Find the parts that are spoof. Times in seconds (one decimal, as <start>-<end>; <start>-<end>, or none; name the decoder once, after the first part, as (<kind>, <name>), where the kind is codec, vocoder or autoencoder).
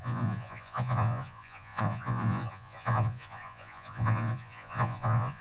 0.0-5.4 (vocoder, Vocos)